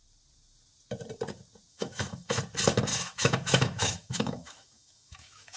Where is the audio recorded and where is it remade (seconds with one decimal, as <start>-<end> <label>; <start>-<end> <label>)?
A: 0.0-1.7 recorded; 1.7-2.4 remade; 2.4-2.9 recorded; 2.9-5.6 remade

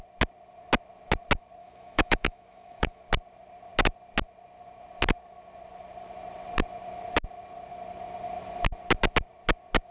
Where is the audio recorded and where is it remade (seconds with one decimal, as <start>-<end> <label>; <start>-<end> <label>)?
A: 0.0-1.6 recorded; 1.6-3.0 remade; 3.0-9.9 recorded